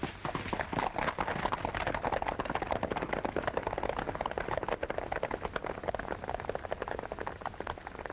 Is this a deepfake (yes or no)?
no